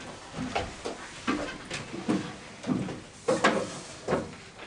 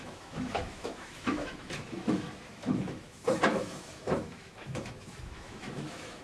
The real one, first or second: first